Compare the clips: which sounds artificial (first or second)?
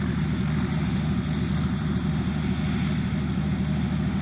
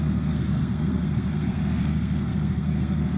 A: second